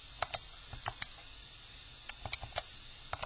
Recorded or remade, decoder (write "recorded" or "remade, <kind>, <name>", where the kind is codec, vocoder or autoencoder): recorded